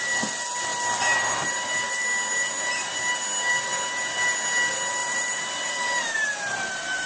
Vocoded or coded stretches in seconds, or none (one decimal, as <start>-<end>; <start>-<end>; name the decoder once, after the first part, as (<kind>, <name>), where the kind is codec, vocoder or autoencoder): 5.0-7.1 (vocoder, BigVGAN v2)